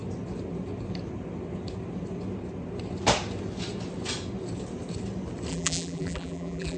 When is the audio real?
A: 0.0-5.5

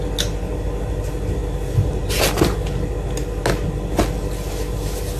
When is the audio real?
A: 0.0-5.2

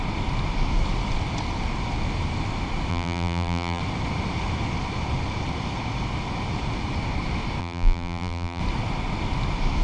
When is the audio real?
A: 0.0-2.9; 3.8-7.6; 8.6-9.8

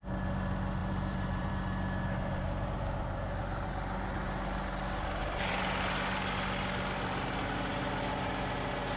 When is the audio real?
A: 0.0-0.8; 1.5-5.2; 5.9-9.0

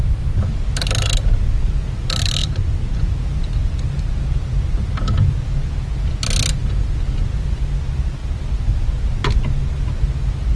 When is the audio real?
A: 0.0-2.4; 3.0-6.6; 7.6-10.6